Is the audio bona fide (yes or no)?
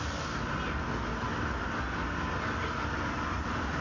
yes